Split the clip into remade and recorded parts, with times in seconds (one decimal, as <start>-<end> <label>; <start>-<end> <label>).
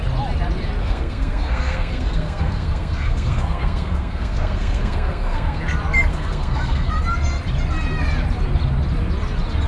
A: 0.0-0.8 recorded; 0.8-5.6 remade; 5.6-6.1 recorded; 6.1-6.9 remade; 6.9-9.7 recorded